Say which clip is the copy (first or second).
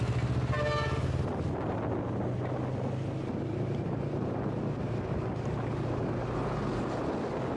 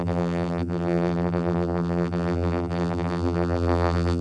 second